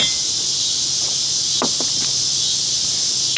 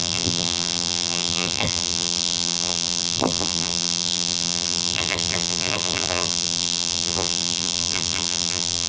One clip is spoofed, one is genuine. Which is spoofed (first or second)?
second